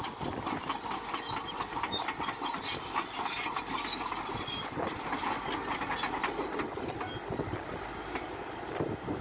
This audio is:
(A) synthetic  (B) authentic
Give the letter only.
B